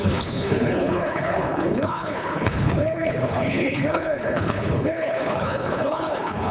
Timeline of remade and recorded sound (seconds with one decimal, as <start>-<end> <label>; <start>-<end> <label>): 0.0-6.5 remade

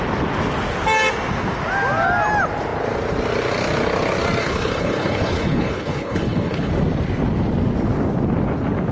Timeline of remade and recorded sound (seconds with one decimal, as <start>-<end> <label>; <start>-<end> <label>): 0.0-4.4 recorded; 4.4-6.7 remade; 6.7-8.9 recorded